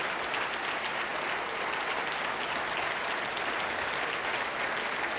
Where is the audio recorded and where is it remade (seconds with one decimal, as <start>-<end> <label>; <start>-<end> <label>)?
0.0-5.2 recorded